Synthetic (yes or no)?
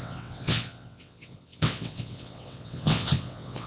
yes